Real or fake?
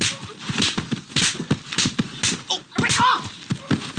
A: real